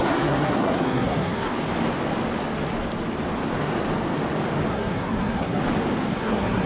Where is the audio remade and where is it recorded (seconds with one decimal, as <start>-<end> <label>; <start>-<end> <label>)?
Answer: 0.0-1.5 remade; 1.5-4.7 recorded; 4.7-5.6 remade; 5.6-6.1 recorded; 6.1-6.7 remade